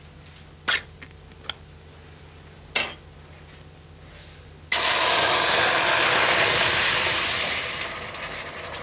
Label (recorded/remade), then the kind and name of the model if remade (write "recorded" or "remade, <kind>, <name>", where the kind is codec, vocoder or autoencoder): recorded